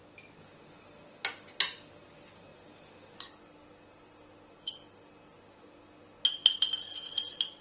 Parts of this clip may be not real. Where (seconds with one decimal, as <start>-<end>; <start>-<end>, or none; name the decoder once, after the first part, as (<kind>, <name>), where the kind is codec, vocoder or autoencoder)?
none